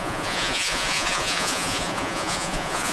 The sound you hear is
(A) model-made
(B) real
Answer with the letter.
A